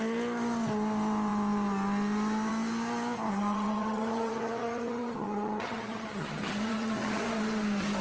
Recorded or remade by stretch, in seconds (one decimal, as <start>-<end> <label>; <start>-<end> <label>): 0.0-3.3 recorded; 3.3-7.2 remade; 7.2-8.0 recorded

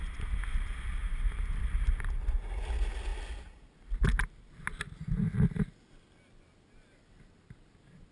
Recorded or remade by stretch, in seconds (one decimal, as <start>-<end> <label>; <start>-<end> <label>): 0.0-1.0 recorded; 1.0-2.6 remade; 2.6-8.1 recorded

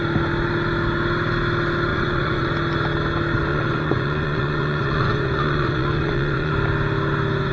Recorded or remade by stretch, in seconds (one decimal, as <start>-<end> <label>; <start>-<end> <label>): 0.0-1.9 recorded; 1.9-2.5 remade; 2.5-3.5 recorded; 3.5-6.5 remade; 6.5-7.5 recorded